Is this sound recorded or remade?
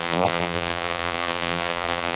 remade